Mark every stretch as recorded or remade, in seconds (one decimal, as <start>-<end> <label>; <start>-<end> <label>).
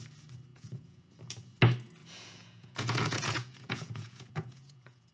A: 0.0-0.5 recorded; 0.5-1.1 remade; 1.1-2.0 recorded; 2.0-5.1 remade